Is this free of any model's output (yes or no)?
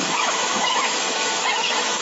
no